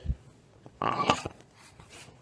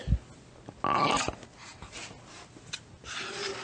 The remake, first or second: first